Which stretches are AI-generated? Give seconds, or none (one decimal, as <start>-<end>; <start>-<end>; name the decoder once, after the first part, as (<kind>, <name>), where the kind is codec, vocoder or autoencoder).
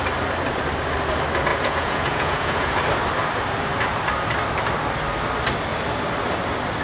1.5-2.7 (vocoder, Vocos)